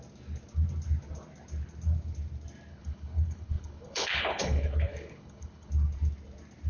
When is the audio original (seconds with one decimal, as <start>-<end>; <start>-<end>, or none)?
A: 0.0-2.7; 5.7-6.7